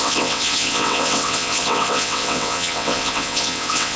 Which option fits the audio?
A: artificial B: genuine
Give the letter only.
A